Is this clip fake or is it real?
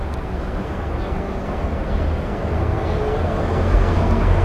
fake